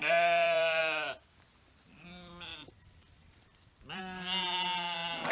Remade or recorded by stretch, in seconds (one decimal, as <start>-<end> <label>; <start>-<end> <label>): 0.0-0.8 remade; 0.8-2.5 recorded; 2.5-4.0 remade; 4.0-5.3 recorded